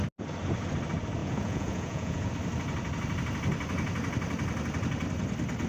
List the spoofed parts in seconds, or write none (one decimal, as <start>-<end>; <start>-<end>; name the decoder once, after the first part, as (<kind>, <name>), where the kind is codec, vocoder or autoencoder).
1.2-2.3 (vocoder, Vocos)